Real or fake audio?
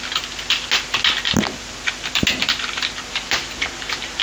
real